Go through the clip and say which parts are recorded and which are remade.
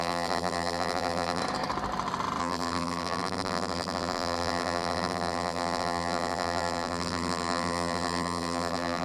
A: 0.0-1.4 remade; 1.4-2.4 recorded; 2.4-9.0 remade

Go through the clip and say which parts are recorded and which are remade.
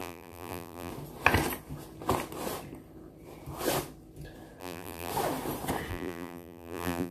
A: 0.0-0.9 remade; 0.9-4.6 recorded; 4.6-5.1 remade; 5.1-5.9 recorded; 5.9-7.1 remade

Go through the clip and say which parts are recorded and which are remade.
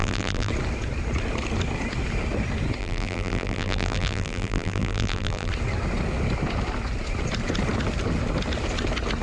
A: 0.0-0.5 remade; 0.5-2.8 recorded; 2.8-5.5 remade; 5.5-9.2 recorded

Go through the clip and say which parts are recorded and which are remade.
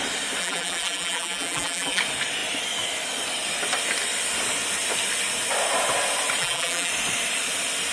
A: 0.0-0.4 recorded; 0.4-2.0 remade; 2.0-6.4 recorded; 6.4-6.9 remade; 6.9-7.9 recorded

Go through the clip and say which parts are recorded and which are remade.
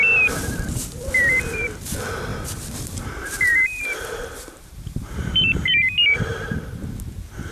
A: 0.0-2.3 recorded; 2.3-5.7 remade; 5.7-7.5 recorded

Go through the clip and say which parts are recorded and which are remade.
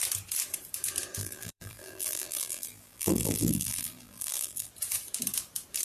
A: 0.0-1.2 recorded; 1.2-4.7 remade; 4.7-5.8 recorded